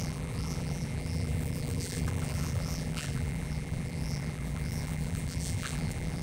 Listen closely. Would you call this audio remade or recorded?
remade